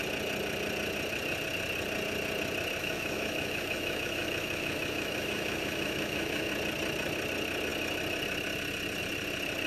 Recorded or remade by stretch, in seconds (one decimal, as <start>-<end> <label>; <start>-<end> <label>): 0.0-2.8 recorded; 2.8-6.5 remade; 6.5-9.7 recorded